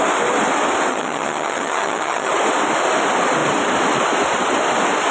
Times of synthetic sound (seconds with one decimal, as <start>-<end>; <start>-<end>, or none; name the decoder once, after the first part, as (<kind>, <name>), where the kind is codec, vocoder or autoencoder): 0.9-2.3 (vocoder, HiFi-GAN)